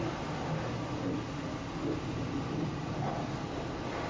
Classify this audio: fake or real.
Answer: real